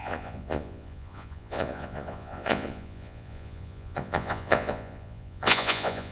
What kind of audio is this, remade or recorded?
remade